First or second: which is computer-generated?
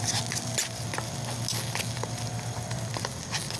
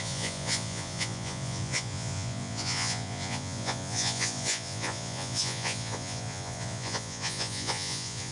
second